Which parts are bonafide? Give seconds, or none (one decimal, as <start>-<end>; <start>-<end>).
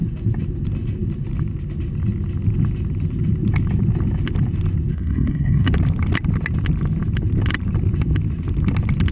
0.0-4.9; 5.7-9.1